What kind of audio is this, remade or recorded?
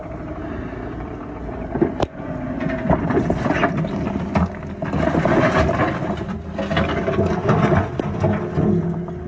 recorded